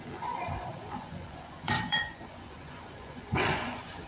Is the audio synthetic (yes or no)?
yes